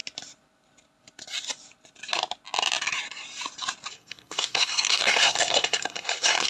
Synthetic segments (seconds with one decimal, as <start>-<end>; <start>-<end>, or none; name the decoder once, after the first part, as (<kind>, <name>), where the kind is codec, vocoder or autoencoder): 3.9-6.5 (codec, SNAC)